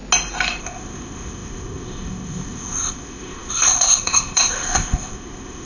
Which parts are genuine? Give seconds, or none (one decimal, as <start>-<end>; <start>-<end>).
0.0-0.6